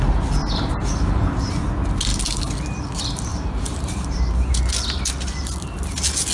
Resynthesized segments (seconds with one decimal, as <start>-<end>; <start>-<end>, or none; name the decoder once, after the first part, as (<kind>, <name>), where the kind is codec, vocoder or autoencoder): 0.4-1.6 (vocoder, BigVGAN v2); 3.3-4.6